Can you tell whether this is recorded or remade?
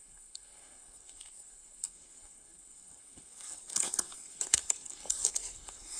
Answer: remade